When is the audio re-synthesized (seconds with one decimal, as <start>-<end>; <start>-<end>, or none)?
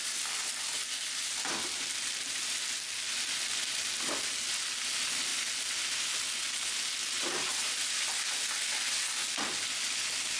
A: none